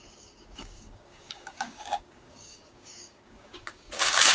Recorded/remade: remade